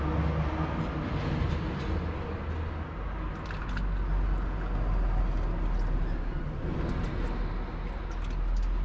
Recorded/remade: recorded